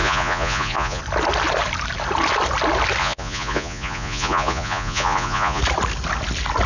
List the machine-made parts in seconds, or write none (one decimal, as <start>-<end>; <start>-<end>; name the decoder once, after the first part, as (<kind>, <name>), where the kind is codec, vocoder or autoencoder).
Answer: 0.0-1.0 (vocoder, Vocos); 3.0-5.6